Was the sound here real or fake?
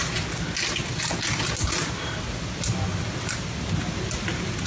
real